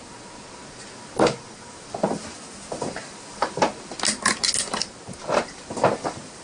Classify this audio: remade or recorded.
recorded